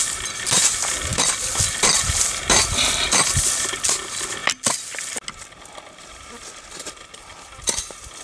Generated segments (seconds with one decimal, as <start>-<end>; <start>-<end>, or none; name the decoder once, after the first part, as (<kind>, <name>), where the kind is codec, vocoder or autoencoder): none